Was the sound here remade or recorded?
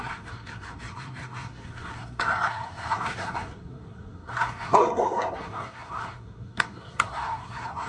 remade